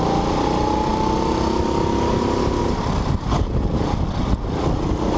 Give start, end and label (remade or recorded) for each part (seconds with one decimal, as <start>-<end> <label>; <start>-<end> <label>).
0.0-5.2 recorded